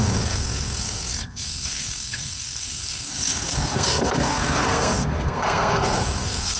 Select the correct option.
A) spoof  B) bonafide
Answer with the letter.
A